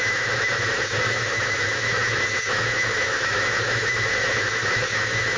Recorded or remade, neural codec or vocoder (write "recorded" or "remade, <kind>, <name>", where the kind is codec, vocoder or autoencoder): remade, autoencoder, DAC-VAE